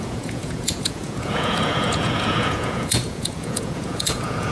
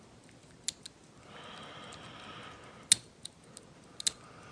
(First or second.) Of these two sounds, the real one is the second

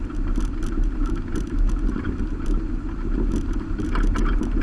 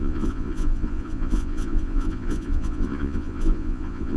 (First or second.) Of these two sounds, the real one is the first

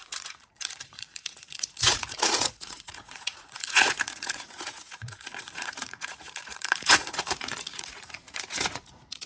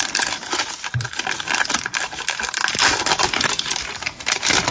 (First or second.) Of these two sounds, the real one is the second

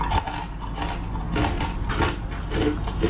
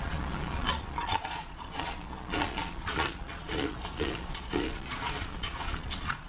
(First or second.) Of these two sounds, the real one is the first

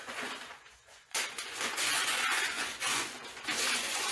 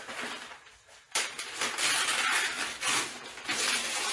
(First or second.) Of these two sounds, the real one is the second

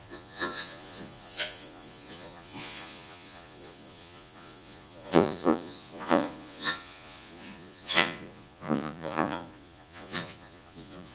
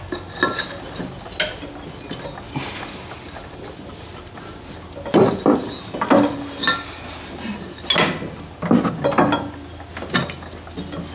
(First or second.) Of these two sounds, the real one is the second